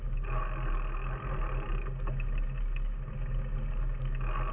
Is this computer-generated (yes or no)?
no